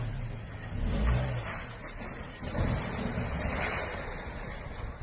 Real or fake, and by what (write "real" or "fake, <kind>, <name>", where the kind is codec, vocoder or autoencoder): real